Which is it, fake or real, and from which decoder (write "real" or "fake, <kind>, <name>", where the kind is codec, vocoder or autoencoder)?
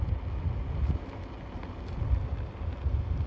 real